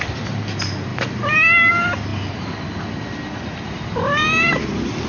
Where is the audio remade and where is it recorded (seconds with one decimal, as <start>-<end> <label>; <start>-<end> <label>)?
0.0-5.1 recorded